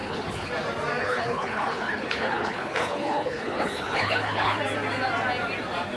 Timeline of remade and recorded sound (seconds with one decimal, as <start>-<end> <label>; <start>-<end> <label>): 0.0-0.5 remade; 0.5-1.0 recorded; 1.0-4.6 remade; 4.6-6.0 recorded